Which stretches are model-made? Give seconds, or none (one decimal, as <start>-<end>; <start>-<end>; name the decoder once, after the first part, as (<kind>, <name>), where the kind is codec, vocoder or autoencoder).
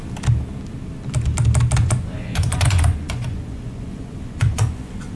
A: 1.8-5.2 (vocoder, Vocos)